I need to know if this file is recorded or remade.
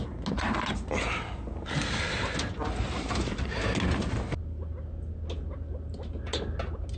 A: recorded